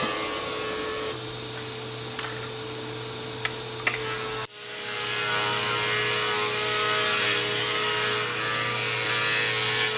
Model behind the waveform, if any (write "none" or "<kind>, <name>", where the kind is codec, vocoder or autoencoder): none